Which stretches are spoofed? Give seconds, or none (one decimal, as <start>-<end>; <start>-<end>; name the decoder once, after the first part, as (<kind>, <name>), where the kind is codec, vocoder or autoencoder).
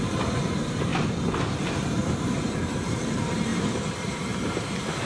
0.0-0.9 (vocoder, BigVGAN v2); 1.6-5.1